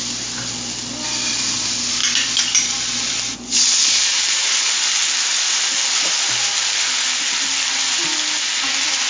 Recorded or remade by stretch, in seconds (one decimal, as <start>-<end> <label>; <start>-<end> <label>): 0.0-9.1 recorded